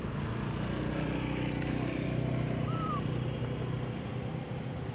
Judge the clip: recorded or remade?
remade